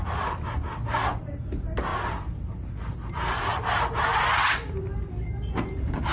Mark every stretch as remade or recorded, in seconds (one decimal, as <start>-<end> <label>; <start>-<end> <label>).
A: 0.0-6.1 recorded